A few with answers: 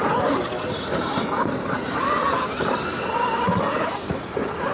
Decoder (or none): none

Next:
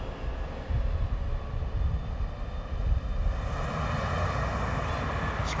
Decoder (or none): none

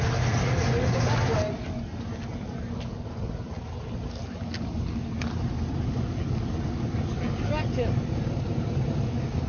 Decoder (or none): none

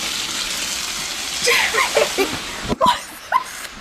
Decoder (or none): none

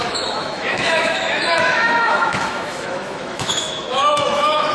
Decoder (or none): autoencoder, DAC-VAE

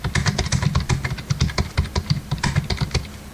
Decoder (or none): vocoder, BigVGAN v2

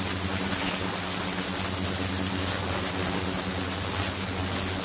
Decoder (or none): none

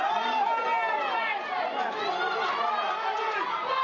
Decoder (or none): none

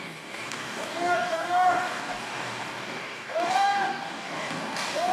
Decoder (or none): codec, DAC